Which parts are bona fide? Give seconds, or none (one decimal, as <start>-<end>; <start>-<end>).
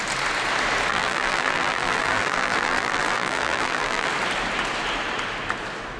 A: 0.0-0.9; 4.1-6.0